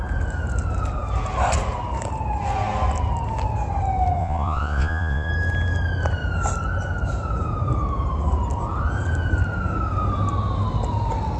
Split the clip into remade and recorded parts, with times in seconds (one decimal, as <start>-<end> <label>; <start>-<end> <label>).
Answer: 0.0-4.2 recorded; 4.2-5.3 remade; 5.3-11.4 recorded